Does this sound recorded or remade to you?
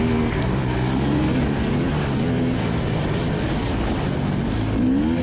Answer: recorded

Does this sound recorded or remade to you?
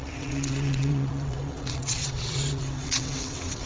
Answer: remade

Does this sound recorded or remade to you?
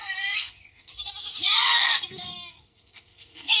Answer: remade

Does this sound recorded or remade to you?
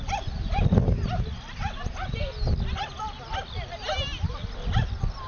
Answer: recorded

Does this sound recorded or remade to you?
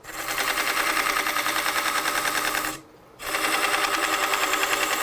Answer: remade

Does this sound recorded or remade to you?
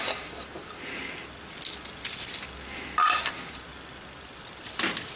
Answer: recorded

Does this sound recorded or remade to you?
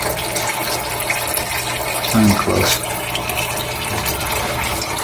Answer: recorded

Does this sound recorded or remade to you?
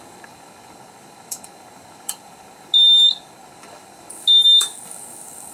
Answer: remade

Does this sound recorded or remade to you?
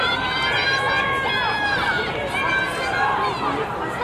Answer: recorded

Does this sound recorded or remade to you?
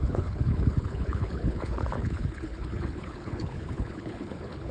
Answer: remade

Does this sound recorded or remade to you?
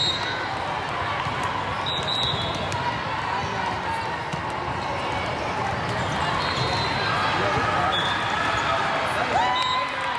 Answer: recorded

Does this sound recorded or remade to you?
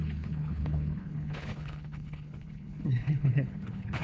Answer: remade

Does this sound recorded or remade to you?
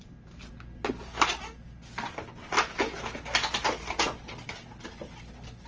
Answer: recorded